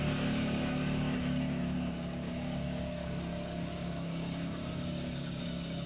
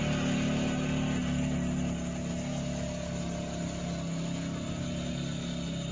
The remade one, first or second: first